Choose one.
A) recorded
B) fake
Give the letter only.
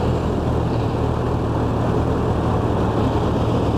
A